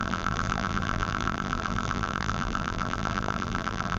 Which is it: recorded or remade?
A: remade